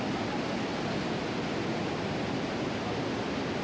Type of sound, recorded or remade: recorded